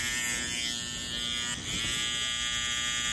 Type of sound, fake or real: real